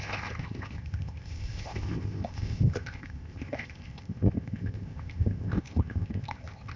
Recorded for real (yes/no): no